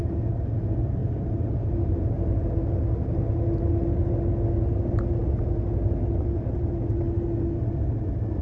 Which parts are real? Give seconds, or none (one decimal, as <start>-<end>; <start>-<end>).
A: 0.0-8.4